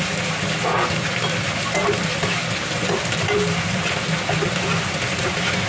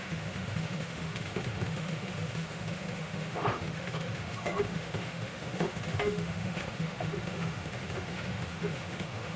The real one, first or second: first